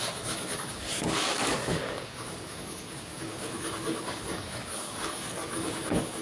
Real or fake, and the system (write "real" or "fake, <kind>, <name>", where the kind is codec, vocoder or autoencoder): fake, codec, DAC